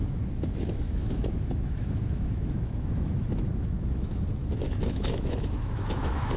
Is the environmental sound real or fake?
fake